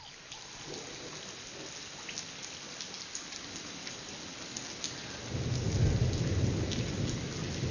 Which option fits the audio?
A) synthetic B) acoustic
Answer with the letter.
B